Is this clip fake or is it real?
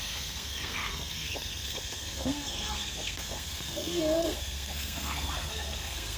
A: fake